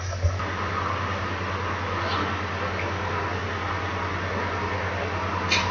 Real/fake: real